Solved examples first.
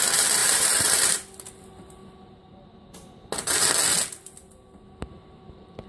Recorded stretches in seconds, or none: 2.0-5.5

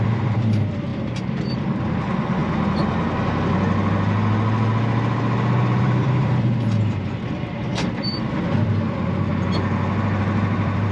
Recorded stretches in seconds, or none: 2.4-5.8; 9.3-10.2

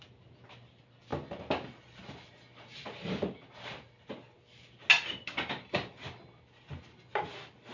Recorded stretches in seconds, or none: 0.0-7.7